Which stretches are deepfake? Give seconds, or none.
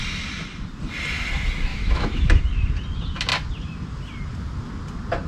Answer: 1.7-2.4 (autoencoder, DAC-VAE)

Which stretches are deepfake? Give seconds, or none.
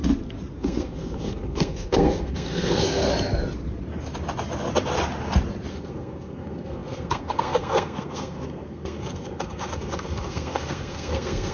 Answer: 0.5-3.1 (codec, SNAC); 5.7-11.5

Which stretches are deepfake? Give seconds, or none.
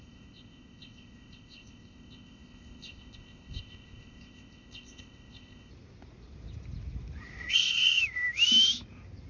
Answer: 0.0-5.7 (codec, ZipCodec); 7.5-8.0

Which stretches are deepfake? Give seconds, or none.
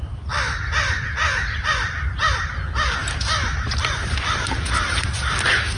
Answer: 1.2-2.5 (vocoder, BigVGAN v2)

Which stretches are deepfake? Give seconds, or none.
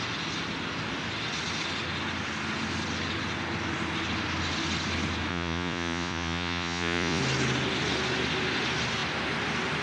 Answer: 5.3-7.2 (vocoder, Vocos)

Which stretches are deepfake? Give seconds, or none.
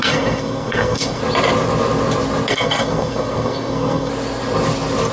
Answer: 0.0-1.2 (codec, SNAC); 2.5-4.1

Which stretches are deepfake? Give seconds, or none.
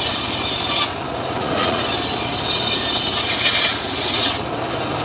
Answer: 0.9-1.8 (vocoder, Vocos); 3.7-4.3